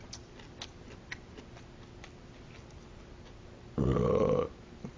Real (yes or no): yes